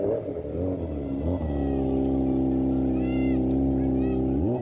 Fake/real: real